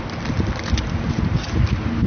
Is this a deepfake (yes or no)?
no